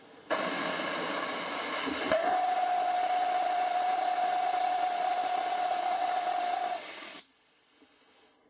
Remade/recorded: recorded